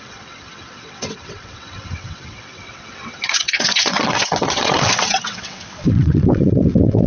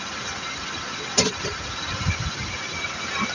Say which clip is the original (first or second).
second